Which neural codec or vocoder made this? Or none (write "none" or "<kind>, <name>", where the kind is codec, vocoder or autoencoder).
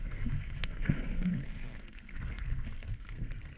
codec, SNAC